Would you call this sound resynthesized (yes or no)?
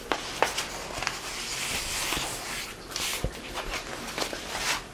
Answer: no